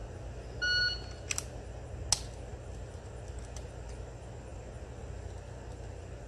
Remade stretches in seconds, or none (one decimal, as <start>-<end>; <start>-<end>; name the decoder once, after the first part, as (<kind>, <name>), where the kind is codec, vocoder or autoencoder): none